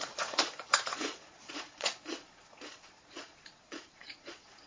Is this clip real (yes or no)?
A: no